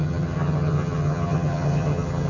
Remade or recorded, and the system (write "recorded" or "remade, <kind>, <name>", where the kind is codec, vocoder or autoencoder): remade, vocoder, HiFi-GAN